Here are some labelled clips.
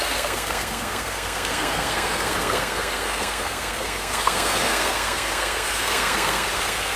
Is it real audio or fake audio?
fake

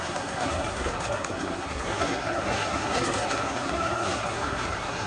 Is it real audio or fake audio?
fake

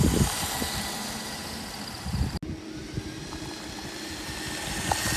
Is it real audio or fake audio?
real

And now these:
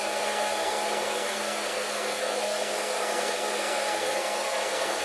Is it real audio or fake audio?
fake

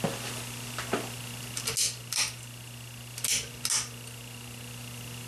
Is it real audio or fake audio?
real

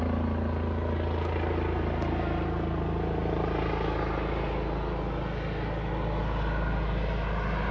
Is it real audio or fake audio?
real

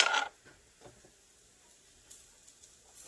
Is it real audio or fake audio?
real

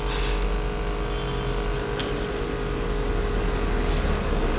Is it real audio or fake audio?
real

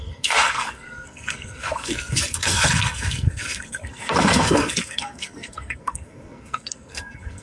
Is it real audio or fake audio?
fake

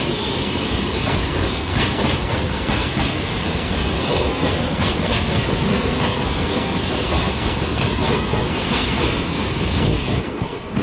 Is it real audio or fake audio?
fake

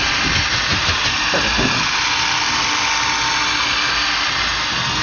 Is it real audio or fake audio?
real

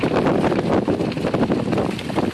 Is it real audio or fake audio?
real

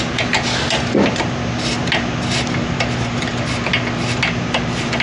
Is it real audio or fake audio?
real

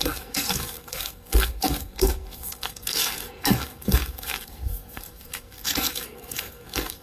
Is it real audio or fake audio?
fake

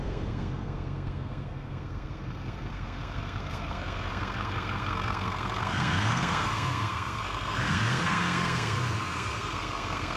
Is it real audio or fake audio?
fake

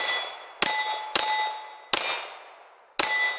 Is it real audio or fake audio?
real